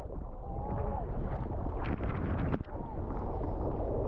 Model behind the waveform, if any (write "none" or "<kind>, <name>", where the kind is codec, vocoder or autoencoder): none